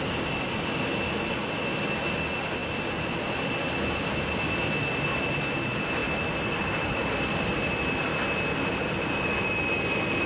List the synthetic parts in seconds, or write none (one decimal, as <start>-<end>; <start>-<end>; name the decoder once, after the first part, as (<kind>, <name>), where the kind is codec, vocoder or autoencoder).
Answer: none